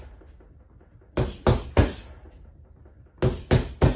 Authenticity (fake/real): real